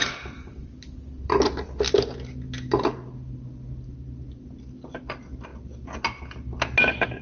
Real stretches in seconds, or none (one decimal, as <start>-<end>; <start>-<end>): 0.0-7.2